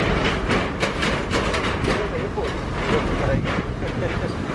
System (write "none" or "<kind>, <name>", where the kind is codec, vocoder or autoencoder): none